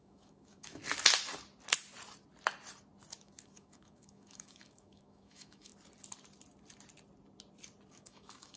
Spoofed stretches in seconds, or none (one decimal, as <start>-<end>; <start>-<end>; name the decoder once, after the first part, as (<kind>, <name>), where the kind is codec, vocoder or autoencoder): 0.0-0.8 (autoencoder, DAC-VAE); 3.1-5.7; 7.9-8.6